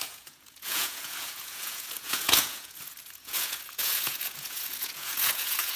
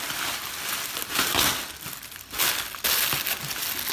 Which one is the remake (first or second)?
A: first